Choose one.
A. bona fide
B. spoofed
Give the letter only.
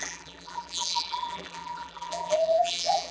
B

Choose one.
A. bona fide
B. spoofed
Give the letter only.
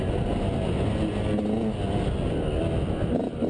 A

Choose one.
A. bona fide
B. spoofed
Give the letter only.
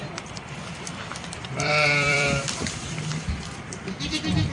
B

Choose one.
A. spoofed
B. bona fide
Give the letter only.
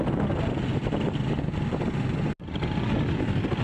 B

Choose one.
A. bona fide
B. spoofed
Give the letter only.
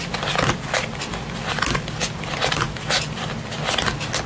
A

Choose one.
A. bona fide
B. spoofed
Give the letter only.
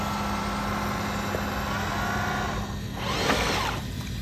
A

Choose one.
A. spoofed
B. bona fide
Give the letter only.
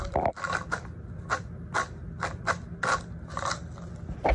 B